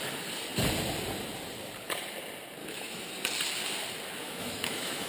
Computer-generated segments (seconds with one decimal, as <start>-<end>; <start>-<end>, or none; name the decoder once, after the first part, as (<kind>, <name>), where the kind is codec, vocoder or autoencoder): 2.6-3.1 (autoencoder, DAC-VAE); 4.2-5.1